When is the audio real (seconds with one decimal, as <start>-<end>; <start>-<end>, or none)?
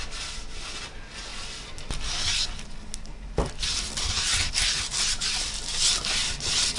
0.0-6.8